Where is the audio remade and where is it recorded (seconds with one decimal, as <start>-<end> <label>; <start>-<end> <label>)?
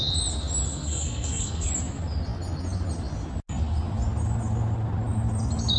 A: 0.0-0.7 recorded; 0.7-1.7 remade; 1.7-5.8 recorded